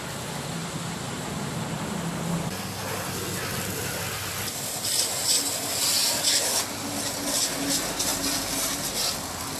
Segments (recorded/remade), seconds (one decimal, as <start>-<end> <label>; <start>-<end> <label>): 0.0-0.6 recorded; 0.6-3.4 remade; 3.4-8.1 recorded; 8.1-9.0 remade; 9.0-9.6 recorded